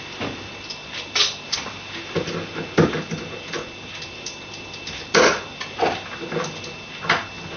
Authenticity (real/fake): real